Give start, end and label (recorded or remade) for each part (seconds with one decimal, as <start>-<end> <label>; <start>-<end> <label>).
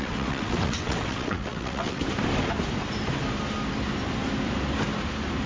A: 0.0-2.0 remade; 2.0-5.5 recorded